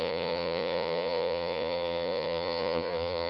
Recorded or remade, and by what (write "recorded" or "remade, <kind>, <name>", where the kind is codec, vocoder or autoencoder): remade, vocoder, Vocos